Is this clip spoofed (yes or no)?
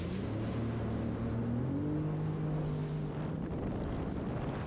no